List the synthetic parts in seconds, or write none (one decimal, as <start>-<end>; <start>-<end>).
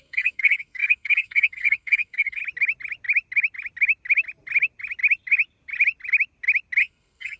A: 0.0-2.4; 6.8-7.4